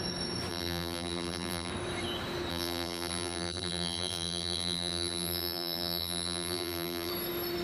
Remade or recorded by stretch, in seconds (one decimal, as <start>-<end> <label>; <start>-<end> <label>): 0.0-0.5 recorded; 0.5-1.7 remade; 1.7-2.5 recorded; 2.5-7.1 remade; 7.1-7.6 recorded